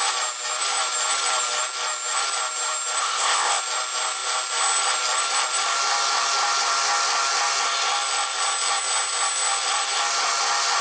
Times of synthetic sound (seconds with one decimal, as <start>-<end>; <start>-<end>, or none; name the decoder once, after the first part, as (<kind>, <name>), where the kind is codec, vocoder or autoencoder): 3.0-3.6 (codec, ZipCodec)